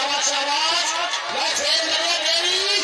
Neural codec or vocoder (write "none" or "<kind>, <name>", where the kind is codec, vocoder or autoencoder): none